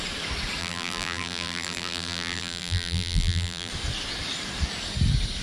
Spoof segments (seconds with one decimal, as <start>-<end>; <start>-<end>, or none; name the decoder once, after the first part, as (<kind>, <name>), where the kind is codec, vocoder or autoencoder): 0.6-3.7 (vocoder, BigVGAN v2)